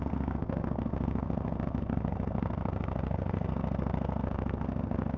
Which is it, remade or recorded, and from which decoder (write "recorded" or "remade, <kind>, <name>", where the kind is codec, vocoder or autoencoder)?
remade, codec, SNAC